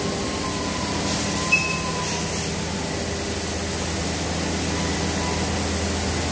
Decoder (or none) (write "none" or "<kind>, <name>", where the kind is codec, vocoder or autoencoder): none